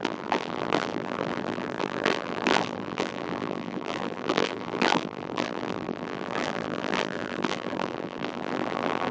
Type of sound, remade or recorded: remade